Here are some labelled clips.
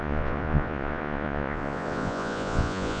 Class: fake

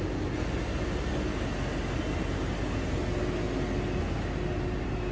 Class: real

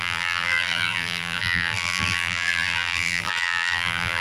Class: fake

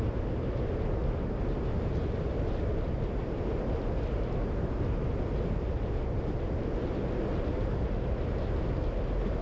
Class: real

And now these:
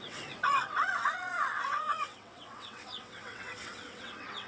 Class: fake